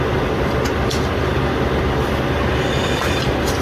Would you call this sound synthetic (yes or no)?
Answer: yes